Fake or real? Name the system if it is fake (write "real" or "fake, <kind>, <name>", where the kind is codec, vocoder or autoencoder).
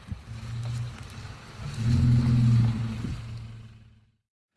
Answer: real